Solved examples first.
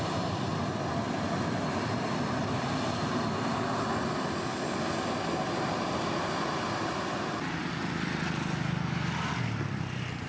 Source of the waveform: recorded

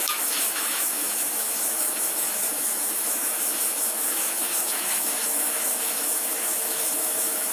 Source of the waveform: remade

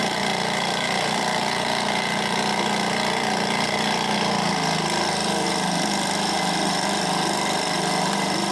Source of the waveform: remade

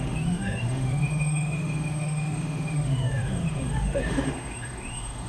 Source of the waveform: remade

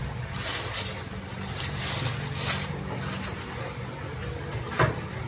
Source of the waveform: recorded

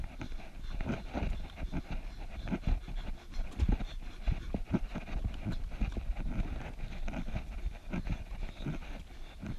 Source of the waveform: recorded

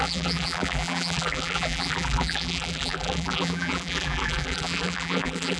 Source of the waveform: remade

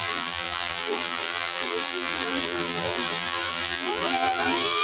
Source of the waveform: remade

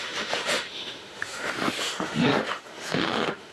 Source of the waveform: remade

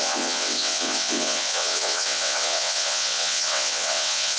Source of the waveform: remade